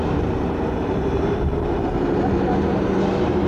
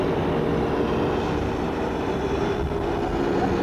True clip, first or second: second